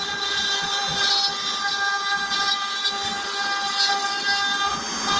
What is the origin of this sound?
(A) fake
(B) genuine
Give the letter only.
B